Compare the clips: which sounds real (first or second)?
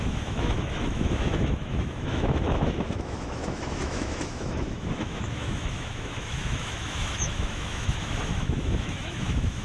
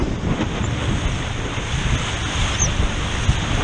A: second